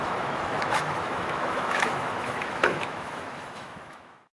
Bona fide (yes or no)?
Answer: no